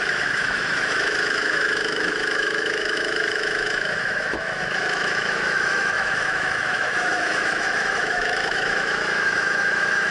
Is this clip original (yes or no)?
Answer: no